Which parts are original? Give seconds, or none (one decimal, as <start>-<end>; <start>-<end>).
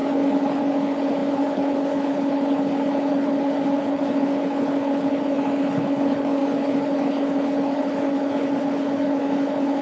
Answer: none